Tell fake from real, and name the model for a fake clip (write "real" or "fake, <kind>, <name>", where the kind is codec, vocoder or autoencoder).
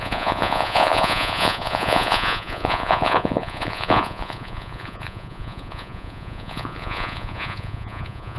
fake, vocoder, Vocos